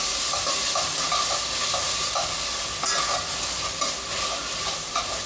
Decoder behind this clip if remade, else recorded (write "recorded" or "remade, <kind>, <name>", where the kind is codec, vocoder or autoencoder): recorded